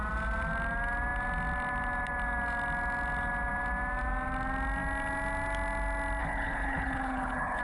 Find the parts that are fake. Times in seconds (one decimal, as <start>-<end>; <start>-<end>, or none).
6.2-7.6